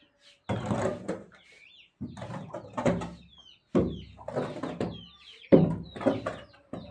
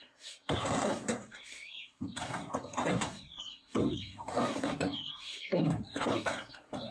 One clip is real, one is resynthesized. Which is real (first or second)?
first